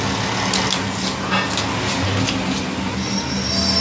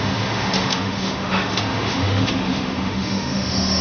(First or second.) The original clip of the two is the first